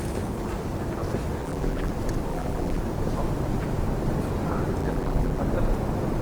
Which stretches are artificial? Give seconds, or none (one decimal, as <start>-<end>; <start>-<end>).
1.4-1.9; 2.3-2.8; 4.8-5.4